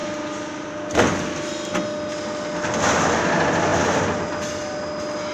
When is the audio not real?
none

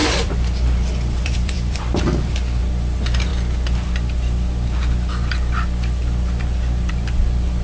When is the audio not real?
0.0-2.6 (vocoder, BigVGAN v2)

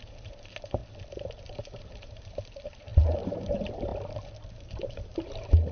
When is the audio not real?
0.0-0.8 (vocoder, BigVGAN v2); 1.4-3.9; 4.5-5.7

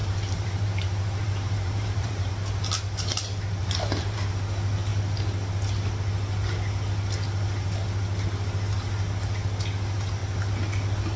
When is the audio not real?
0.0-2.3 (vocoder, BigVGAN v2); 3.6-4.4

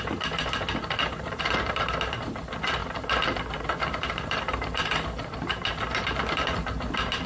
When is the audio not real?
0.0-7.3 (vocoder, BigVGAN v2)

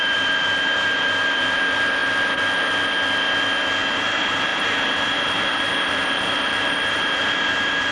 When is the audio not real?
0.0-2.0 (vocoder, BigVGAN v2); 3.9-7.9

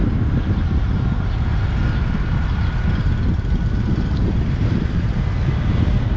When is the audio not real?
3.7-6.2 (vocoder, BigVGAN v2)